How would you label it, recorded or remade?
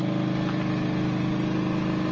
recorded